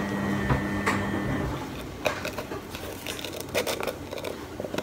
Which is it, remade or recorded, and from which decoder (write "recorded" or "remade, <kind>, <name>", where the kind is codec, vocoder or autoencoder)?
recorded